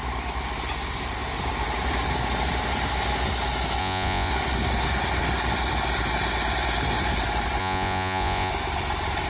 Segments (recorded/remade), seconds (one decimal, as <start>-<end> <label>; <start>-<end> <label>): 0.0-3.8 recorded; 3.8-4.3 remade; 4.3-7.6 recorded; 7.6-8.5 remade; 8.5-9.3 recorded